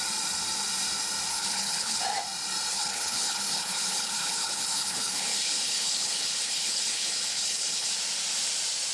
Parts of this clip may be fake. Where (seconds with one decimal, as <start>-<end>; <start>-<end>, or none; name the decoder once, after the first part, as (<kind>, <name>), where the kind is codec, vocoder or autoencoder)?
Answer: 1.3-2.0 (codec, HILCodec); 2.7-7.9